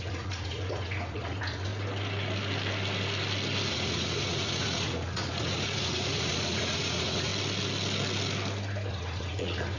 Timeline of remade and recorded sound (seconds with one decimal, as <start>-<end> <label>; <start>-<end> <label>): 0.0-1.7 remade; 1.7-3.7 recorded; 3.7-7.3 remade; 7.3-8.9 recorded; 8.9-9.8 remade